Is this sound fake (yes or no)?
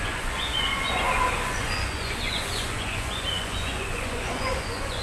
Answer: yes